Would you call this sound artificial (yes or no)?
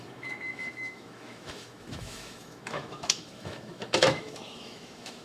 yes